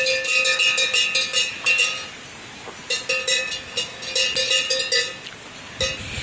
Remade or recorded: recorded